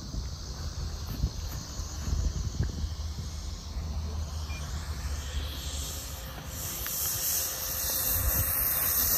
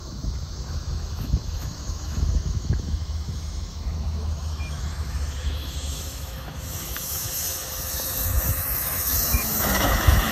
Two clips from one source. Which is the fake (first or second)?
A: second